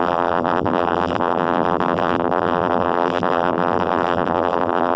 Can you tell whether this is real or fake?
fake